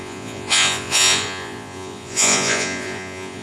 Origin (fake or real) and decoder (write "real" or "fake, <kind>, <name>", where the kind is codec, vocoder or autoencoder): fake, vocoder, Vocos